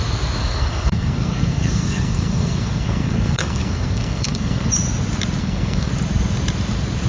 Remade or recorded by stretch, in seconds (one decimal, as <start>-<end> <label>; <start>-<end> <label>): 0.0-0.4 recorded; 0.4-4.7 remade; 4.7-5.4 recorded; 5.4-5.9 remade; 5.9-7.1 recorded